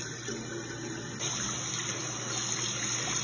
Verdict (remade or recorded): recorded